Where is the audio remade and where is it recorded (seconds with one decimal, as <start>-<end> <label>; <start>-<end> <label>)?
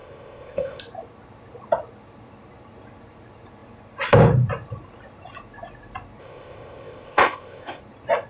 0.0-0.8 remade; 0.8-6.2 recorded; 6.2-7.8 remade; 7.8-8.3 recorded